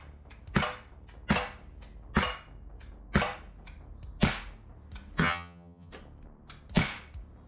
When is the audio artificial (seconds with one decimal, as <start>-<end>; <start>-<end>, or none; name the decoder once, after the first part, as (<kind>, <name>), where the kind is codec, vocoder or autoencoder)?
5.2-5.9 (vocoder, HiFi-GAN)